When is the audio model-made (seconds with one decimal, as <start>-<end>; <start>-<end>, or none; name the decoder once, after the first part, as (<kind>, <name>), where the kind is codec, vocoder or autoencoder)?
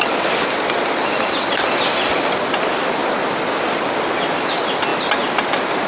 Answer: none